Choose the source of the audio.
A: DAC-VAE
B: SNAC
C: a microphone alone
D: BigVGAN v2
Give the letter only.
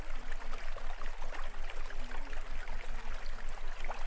C